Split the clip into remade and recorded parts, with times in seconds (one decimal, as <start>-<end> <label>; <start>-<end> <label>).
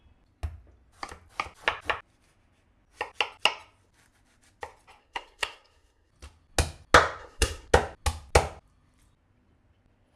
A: 0.0-5.0 recorded; 5.0-6.1 remade; 6.1-7.2 recorded; 7.2-7.7 remade; 7.7-10.2 recorded